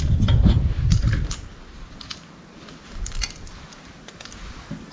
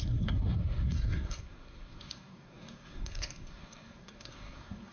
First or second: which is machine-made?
second